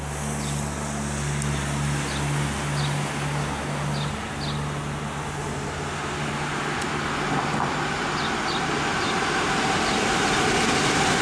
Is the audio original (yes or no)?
yes